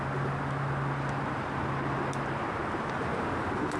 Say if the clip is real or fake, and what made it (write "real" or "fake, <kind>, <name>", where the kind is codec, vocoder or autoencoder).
real